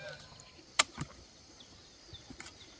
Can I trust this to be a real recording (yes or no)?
yes